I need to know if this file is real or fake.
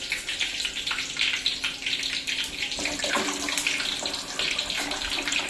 real